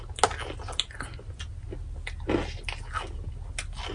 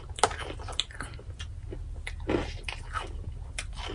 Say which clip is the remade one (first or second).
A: second